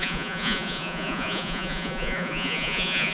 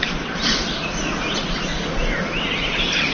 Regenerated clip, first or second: first